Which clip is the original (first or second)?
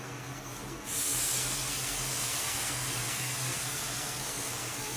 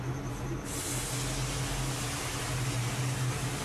second